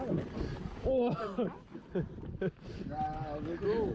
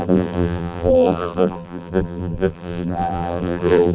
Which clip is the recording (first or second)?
first